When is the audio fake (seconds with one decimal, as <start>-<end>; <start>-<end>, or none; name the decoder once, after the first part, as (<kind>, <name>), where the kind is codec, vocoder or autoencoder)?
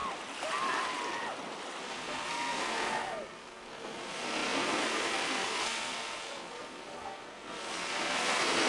1.8-8.7 (codec, SNAC)